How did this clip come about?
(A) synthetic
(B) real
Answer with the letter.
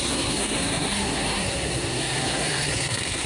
A